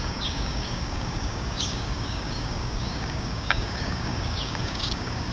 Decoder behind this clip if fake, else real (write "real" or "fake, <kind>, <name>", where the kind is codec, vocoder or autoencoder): fake, codec, DAC